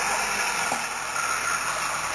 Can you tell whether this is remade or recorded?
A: recorded